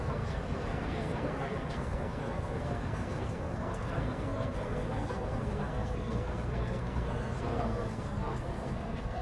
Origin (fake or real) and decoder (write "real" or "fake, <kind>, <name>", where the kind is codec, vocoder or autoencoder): fake, codec, SNAC